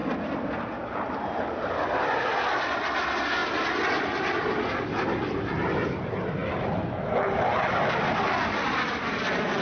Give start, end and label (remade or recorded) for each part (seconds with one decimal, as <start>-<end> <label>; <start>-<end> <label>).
0.0-9.6 recorded